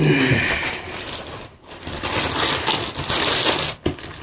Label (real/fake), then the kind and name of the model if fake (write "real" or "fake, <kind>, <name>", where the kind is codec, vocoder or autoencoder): real